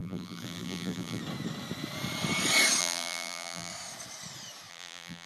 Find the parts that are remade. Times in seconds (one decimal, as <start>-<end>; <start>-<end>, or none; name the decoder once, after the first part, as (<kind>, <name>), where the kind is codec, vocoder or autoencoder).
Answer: 0.0-1.2 (vocoder, BigVGAN v2); 2.8-3.7; 4.7-5.3